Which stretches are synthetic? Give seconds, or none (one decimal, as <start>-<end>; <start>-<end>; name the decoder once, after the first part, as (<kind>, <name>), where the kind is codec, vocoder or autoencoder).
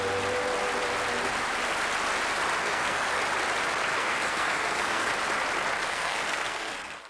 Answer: 2.6-3.2 (codec, SNAC); 3.9-5.1; 5.9-7.1